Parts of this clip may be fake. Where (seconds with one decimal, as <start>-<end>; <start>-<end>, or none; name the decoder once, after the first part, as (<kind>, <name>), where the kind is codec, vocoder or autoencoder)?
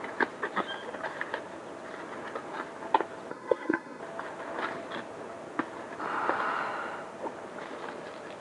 3.3-4.0 (codec, SNAC)